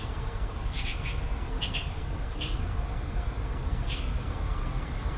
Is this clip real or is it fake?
fake